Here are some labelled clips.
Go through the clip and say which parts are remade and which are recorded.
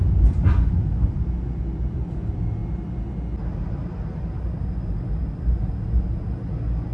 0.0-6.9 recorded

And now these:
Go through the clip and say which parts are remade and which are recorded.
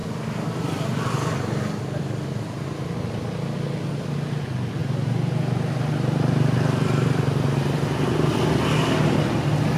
0.0-9.8 recorded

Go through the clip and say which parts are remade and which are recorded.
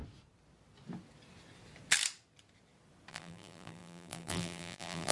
0.0-3.1 recorded; 3.1-5.1 remade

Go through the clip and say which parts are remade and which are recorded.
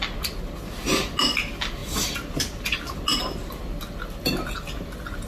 0.0-5.3 recorded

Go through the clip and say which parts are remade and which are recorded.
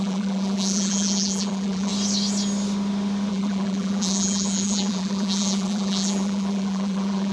0.0-1.9 remade; 1.9-3.3 recorded; 3.3-7.3 remade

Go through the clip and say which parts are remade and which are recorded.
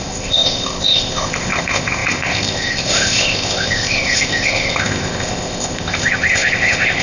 0.0-7.0 remade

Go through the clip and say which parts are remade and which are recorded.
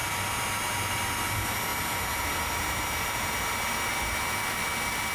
0.0-5.1 recorded